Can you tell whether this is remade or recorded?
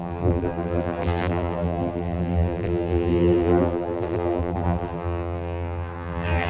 remade